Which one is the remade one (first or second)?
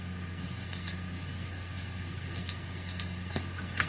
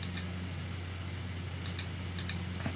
first